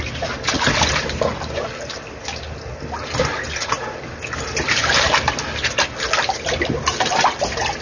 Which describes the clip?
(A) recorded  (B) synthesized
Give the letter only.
A